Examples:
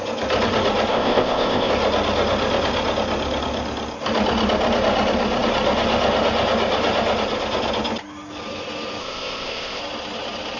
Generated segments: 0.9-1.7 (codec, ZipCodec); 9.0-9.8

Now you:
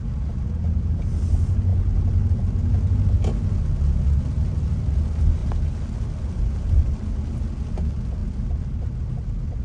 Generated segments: none

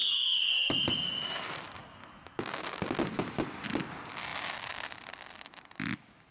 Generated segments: 0.0-0.5 (autoencoder, DAC-VAE); 2.0-2.6

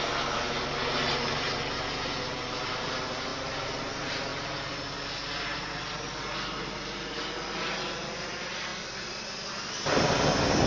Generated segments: none